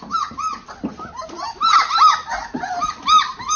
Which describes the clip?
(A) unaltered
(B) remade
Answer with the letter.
A